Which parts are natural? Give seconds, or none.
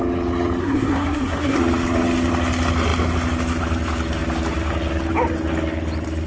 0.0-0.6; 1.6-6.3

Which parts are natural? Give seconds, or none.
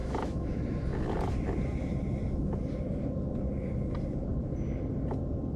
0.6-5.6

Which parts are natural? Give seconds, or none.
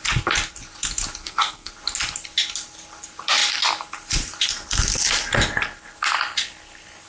0.0-1.2; 1.7-7.1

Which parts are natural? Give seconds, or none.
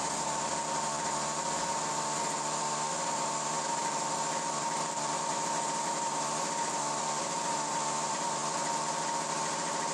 0.5-2.6; 3.8-5.3; 8.4-9.5